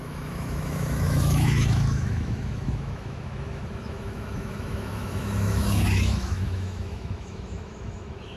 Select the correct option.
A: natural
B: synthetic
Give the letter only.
B